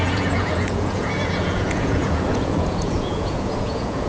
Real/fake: fake